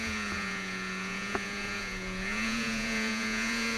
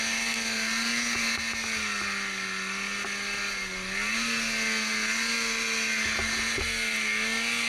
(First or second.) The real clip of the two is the second